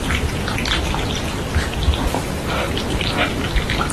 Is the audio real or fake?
real